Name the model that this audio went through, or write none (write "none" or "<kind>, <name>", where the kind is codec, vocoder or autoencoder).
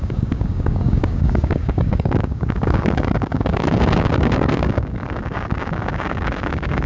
codec, DAC